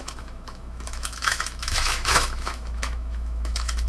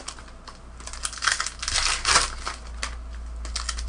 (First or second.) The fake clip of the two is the first